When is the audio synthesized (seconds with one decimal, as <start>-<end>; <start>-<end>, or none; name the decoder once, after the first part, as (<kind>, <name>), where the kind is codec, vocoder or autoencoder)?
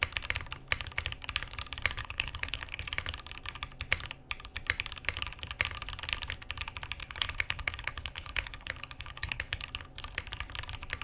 2.0-2.8 (codec, HILCodec); 7.0-9.7